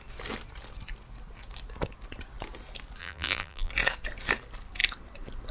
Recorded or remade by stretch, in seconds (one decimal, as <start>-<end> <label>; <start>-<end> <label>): 0.0-3.0 recorded; 3.0-3.7 remade; 3.7-5.5 recorded